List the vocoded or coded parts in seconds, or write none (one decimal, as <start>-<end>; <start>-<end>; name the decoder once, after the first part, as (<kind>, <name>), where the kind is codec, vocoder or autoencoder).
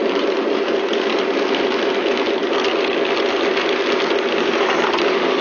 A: 0.0-0.9 (vocoder, BigVGAN v2)